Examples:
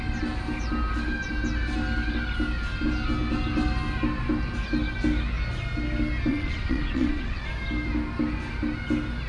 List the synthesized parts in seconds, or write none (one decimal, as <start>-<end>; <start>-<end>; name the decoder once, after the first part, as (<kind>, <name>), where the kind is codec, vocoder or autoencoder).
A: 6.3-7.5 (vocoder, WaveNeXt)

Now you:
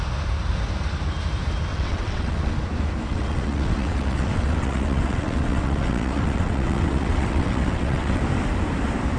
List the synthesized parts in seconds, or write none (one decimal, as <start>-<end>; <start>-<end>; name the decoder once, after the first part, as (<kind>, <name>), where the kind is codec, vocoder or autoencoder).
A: 1.7-2.5 (vocoder, WaveNeXt); 3.1-8.2

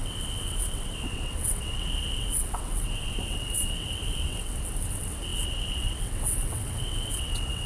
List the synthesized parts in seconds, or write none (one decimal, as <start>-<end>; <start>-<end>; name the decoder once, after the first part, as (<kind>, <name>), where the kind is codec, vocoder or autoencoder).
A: 0.0-7.7 (vocoder, WaveNeXt)

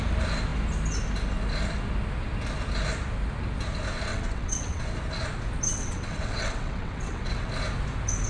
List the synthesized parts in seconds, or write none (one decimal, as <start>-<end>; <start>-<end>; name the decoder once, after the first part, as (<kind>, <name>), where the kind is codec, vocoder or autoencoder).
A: 4.1-4.8 (vocoder, WaveNeXt); 5.7-7.5

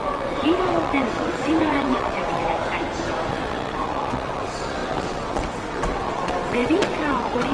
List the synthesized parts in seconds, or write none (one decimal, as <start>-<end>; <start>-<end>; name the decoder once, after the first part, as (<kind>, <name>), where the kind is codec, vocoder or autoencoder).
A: 0.0-2.4 (vocoder, WaveNeXt); 3.3-7.5

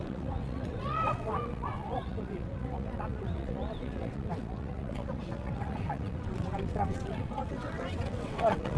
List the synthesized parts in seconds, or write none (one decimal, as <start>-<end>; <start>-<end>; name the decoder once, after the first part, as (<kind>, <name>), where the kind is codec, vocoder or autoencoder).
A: 0.0-8.8 (vocoder, WaveNeXt)

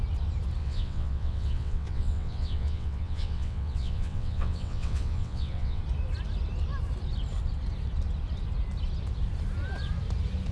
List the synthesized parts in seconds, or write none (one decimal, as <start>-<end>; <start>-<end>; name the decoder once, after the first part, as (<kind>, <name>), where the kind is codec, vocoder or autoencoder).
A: 0.6-5.8 (vocoder, WaveNeXt)

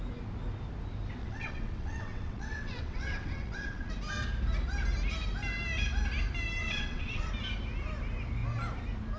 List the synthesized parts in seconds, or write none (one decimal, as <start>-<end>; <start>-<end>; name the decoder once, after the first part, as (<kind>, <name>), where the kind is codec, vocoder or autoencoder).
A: 1.2-3.9 (vocoder, WaveNeXt); 6.6-7.3